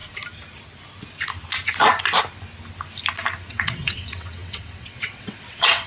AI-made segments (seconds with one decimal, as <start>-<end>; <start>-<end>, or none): 3.5-5.9